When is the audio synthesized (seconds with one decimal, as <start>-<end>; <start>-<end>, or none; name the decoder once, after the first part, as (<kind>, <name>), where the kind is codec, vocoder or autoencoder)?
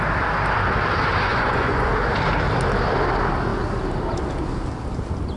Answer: 1.3-1.9 (vocoder, Vocos)